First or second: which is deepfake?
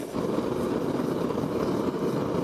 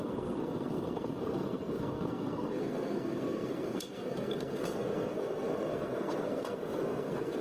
second